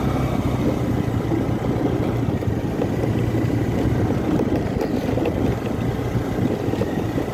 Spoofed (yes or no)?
no